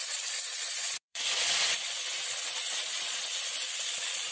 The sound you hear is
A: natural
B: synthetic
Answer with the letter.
B